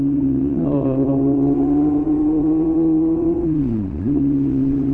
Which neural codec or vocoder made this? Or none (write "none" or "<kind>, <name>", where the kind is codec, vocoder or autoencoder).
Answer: vocoder, WaveNeXt